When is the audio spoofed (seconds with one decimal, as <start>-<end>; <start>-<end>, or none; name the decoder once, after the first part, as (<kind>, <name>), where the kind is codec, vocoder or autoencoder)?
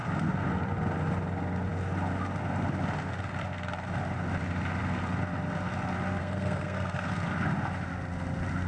6.2-7.1 (codec, SNAC)